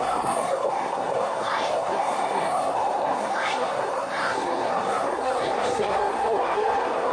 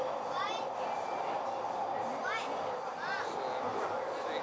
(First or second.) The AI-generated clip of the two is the first